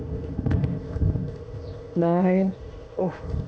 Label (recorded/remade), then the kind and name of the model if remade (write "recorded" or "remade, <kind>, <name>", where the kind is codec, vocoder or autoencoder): remade, codec, ZipCodec